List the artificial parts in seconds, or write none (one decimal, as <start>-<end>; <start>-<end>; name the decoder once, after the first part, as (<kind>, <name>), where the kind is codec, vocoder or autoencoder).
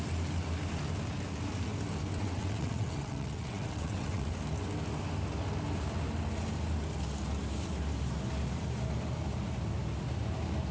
2.2-4.3 (vocoder, WaveNeXt)